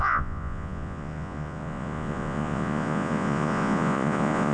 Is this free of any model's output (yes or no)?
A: no